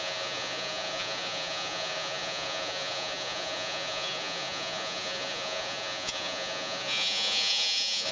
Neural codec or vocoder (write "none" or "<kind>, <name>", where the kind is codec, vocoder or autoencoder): vocoder, Vocos